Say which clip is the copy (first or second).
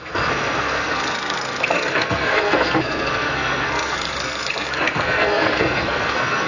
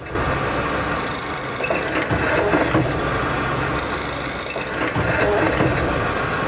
first